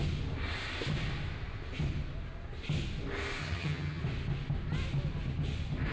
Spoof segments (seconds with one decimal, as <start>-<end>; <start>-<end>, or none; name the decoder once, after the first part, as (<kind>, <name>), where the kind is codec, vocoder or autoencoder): 3.4-4.0 (vocoder, HiFi-GAN)